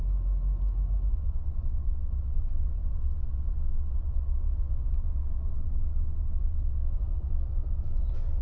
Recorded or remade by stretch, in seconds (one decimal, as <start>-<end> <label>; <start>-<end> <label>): 0.0-1.1 recorded; 1.1-8.4 remade